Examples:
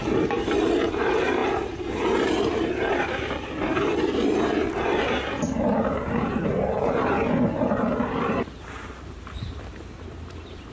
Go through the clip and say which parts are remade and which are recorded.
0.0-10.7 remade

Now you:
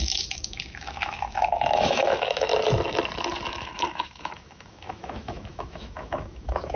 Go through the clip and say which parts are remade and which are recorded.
0.0-2.5 remade; 2.5-3.5 recorded; 3.5-6.8 remade

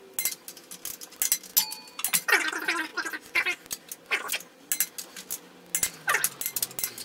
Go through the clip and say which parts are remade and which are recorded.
0.0-7.0 recorded

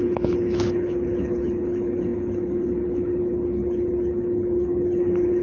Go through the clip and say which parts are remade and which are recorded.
0.0-5.4 remade